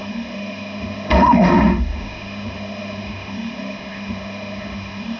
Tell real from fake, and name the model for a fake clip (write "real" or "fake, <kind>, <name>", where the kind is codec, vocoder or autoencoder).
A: fake, autoencoder, DAC-VAE